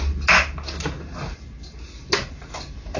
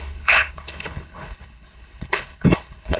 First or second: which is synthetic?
second